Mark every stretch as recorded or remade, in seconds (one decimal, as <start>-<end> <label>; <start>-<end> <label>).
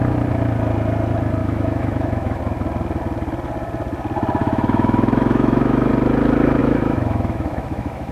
0.0-1.4 recorded; 1.4-2.4 remade; 2.4-4.4 recorded; 4.4-5.9 remade; 5.9-6.6 recorded; 6.6-8.1 remade